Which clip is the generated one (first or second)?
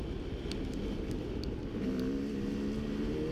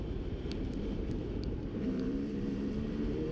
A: second